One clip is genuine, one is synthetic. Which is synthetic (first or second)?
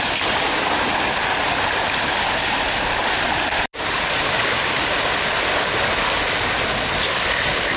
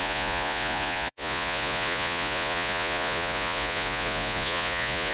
second